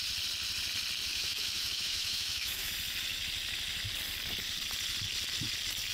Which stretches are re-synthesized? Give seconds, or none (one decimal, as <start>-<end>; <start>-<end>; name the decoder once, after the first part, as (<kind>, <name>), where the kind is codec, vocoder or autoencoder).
1.1-2.7 (autoencoder, DAC-VAE)